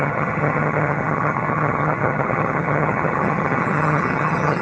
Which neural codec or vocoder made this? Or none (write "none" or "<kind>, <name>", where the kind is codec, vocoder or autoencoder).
vocoder, HiFi-GAN